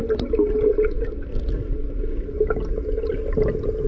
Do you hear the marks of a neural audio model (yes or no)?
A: no